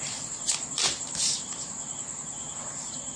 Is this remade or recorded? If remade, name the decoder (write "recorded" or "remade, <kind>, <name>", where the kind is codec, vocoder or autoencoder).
remade, vocoder, BigVGAN v2